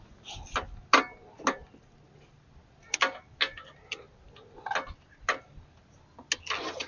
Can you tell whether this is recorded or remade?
recorded